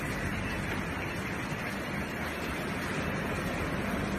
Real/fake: real